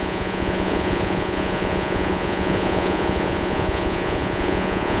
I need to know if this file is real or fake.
fake